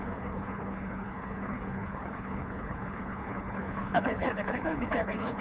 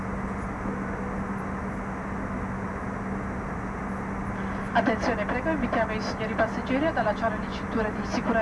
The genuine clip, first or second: second